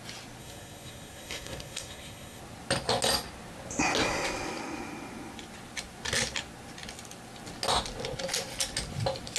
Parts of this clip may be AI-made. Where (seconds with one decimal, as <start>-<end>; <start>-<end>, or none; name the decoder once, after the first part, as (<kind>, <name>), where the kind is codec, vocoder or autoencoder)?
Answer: 0.4-2.4 (codec, SNAC)